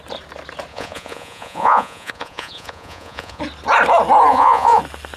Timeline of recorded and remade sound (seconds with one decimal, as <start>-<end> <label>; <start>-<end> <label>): 0.0-0.7 recorded; 0.7-3.4 remade; 3.4-4.3 recorded; 4.3-4.8 remade; 4.8-5.2 recorded